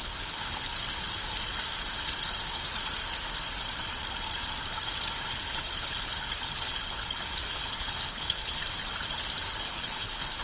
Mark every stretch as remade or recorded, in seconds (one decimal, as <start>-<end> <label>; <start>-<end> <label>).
0.0-0.7 remade; 0.7-5.3 recorded; 5.3-8.6 remade; 8.6-9.6 recorded; 9.6-10.4 remade